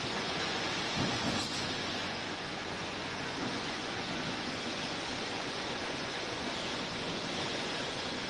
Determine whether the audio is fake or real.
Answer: fake